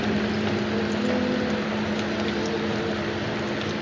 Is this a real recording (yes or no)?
yes